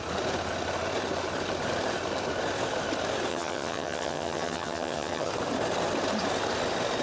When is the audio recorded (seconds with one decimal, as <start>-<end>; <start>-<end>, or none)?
0.0-3.3; 5.3-7.0